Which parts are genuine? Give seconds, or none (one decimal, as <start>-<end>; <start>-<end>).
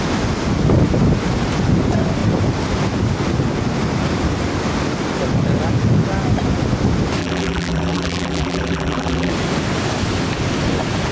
0.0-7.2; 9.3-11.1